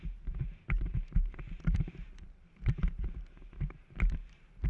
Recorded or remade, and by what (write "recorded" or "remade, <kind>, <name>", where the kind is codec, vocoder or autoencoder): remade, vocoder, BigVGAN v2